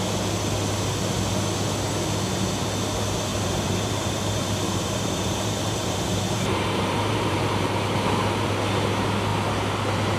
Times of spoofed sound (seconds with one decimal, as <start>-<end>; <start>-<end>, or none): 3.3-7.6